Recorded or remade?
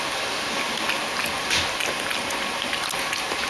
recorded